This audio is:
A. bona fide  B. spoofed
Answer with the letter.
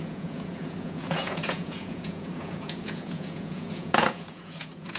B